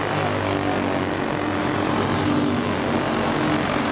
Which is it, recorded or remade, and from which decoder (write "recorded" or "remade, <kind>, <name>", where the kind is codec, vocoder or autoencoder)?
recorded